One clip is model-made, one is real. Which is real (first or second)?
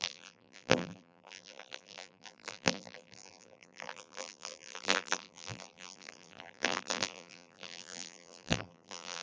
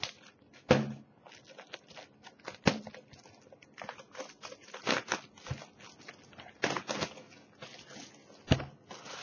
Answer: second